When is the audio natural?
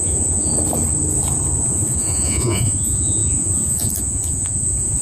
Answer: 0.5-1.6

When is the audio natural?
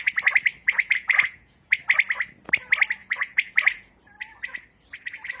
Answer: 0.0-0.6; 1.8-3.0; 4.0-5.4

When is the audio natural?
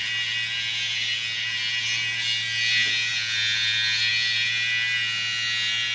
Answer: 0.0-5.9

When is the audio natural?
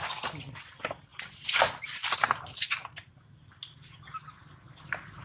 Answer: 0.0-5.2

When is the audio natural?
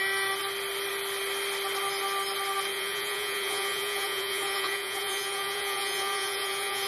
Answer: 0.0-2.7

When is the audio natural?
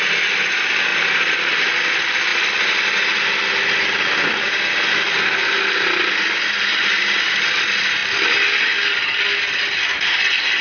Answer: 0.0-10.6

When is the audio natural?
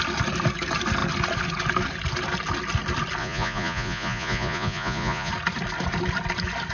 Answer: 0.0-3.2; 5.3-6.7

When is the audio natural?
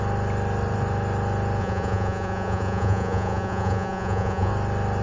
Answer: 0.0-1.6; 4.5-5.0